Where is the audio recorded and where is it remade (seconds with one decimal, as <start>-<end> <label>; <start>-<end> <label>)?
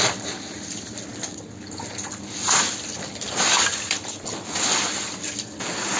0.0-6.0 recorded